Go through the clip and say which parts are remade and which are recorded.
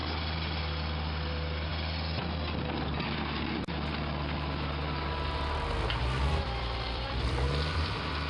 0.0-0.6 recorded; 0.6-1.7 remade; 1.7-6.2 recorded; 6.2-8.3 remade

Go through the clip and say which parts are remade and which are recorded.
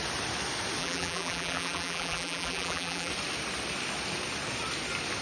0.0-0.8 recorded; 0.8-3.1 remade; 3.1-5.2 recorded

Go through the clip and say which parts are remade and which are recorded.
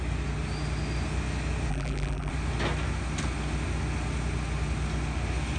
0.0-1.7 recorded; 1.7-2.3 remade; 2.3-5.6 recorded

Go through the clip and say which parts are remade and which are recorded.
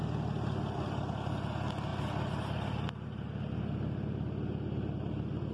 0.0-5.5 recorded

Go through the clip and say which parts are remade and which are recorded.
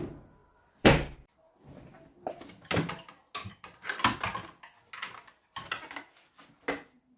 0.0-0.4 recorded; 0.4-2.3 remade; 2.3-7.2 recorded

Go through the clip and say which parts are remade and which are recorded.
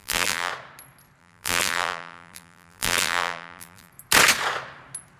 0.0-0.5 remade; 0.5-1.2 recorded; 1.2-3.9 remade; 3.9-5.2 recorded